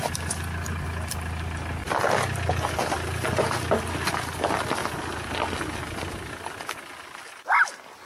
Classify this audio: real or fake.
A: real